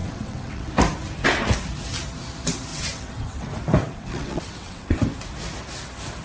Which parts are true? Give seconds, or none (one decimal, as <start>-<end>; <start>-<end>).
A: 0.7-2.7; 3.5-3.9; 5.0-6.2